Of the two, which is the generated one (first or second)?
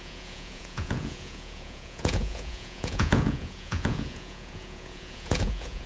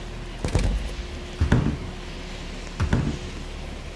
first